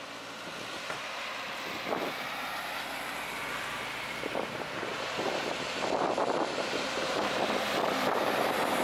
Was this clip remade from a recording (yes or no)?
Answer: yes